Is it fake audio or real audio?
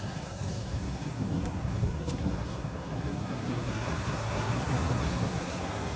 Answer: fake